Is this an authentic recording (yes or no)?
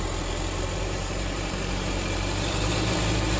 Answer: no